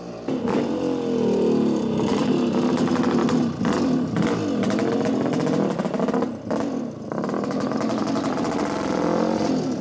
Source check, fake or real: real